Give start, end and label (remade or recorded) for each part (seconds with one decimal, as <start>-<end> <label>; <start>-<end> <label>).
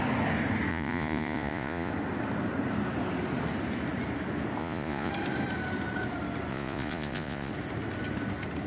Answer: 0.0-0.7 recorded; 0.7-1.9 remade; 1.9-4.6 recorded; 4.6-5.1 remade; 5.1-6.5 recorded; 6.5-7.5 remade; 7.5-8.7 recorded